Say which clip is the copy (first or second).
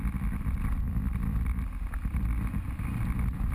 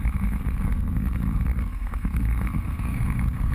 second